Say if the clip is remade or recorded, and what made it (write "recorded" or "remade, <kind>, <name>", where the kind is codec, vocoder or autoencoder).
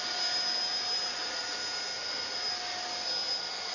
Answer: recorded